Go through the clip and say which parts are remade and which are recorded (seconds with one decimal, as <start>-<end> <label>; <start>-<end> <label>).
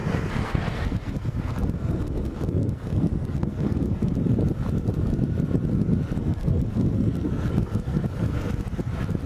0.0-4.1 remade; 4.1-6.2 recorded; 6.2-8.5 remade; 8.5-9.3 recorded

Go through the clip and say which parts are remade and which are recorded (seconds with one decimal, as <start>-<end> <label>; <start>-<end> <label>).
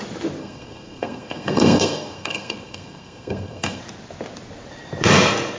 0.0-0.4 recorded; 0.4-3.8 remade; 3.8-5.6 recorded